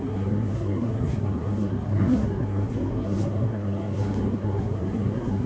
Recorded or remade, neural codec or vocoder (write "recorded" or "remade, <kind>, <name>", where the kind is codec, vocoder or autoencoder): remade, codec, SNAC